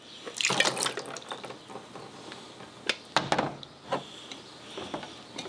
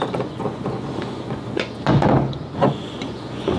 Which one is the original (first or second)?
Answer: first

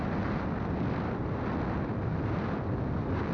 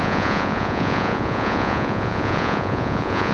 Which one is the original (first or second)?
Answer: first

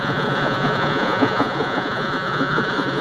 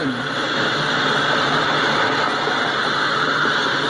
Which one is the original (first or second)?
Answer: second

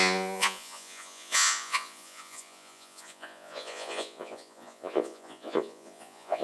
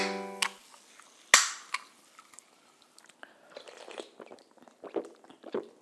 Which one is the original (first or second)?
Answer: second